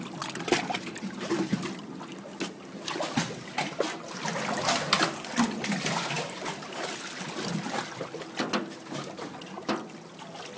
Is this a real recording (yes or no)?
yes